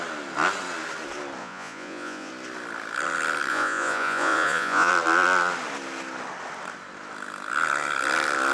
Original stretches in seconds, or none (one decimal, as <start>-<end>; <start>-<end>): 0.0-1.4; 2.3-3.5; 4.9-8.5